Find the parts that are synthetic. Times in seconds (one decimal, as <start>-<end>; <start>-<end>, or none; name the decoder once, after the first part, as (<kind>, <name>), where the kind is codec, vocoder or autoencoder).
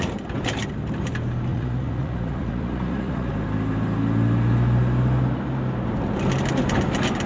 1.5-3.3 (vocoder, Vocos)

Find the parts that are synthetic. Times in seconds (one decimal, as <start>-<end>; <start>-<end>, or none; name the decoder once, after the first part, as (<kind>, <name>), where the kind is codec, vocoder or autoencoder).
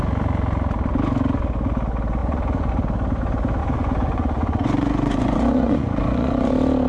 2.2-2.7 (vocoder, Vocos); 3.6-6.5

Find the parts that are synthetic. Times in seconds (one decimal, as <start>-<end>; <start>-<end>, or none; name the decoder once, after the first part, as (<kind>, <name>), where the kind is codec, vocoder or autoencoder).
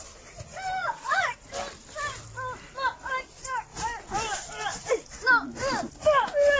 0.8-1.5 (vocoder, Vocos)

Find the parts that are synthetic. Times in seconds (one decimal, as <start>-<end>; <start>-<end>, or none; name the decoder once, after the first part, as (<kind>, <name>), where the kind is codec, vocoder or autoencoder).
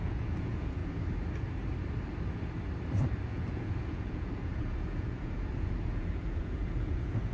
0.0-0.8 (vocoder, Vocos); 3.3-7.3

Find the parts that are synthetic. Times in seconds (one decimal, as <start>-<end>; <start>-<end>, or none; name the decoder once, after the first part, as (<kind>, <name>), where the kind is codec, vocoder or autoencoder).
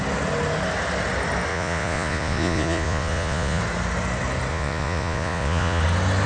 1.5-3.6 (vocoder, Vocos); 4.5-5.8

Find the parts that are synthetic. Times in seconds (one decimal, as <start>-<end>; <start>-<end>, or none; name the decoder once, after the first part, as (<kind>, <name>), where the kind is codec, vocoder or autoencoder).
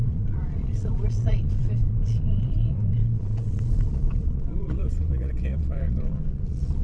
0.0-6.8 (vocoder, Vocos)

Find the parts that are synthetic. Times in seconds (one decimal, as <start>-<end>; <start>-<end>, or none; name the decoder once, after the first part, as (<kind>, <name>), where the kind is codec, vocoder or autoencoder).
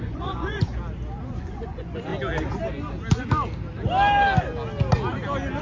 0.0-0.7 (vocoder, Vocos); 1.4-2.1